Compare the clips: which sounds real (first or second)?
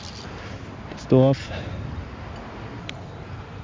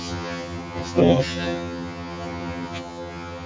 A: first